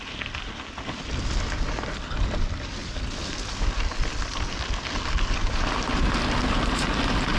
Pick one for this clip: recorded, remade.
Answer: recorded